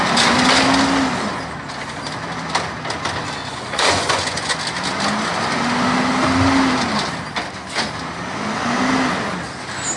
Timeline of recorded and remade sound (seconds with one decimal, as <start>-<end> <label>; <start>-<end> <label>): 0.0-3.4 recorded; 3.4-4.6 remade; 4.6-10.0 recorded